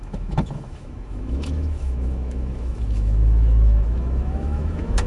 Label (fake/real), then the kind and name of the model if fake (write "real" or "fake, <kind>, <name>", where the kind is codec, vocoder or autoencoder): fake, autoencoder, DAC-VAE